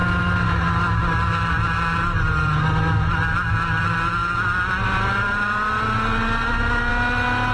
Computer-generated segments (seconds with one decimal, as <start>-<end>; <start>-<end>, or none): none